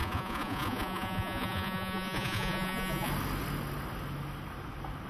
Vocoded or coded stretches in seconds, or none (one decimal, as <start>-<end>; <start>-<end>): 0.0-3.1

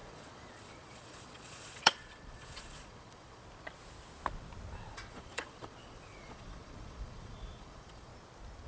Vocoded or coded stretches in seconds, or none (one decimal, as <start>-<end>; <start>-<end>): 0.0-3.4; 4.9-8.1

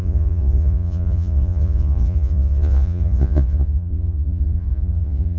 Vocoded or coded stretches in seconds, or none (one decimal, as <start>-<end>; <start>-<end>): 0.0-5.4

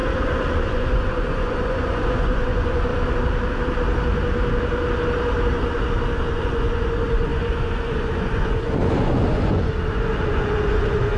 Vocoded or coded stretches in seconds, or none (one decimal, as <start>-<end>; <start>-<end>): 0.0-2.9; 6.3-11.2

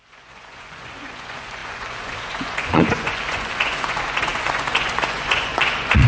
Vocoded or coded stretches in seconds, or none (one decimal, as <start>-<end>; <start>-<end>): 0.0-6.1

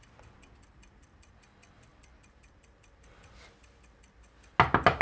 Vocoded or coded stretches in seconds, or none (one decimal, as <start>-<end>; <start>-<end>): none

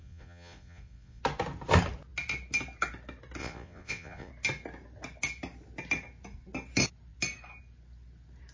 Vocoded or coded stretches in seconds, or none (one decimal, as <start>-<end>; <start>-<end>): 0.0-1.2; 3.4-4.3